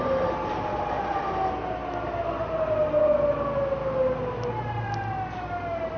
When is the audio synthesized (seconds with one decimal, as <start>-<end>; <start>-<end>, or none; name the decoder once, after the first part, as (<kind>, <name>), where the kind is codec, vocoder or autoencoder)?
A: none